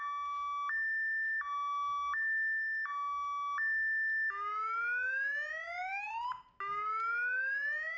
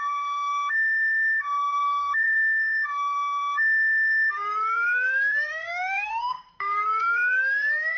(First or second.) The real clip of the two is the first